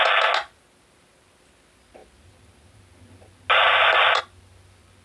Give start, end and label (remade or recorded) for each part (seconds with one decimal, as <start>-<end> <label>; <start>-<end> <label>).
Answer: 0.0-5.0 recorded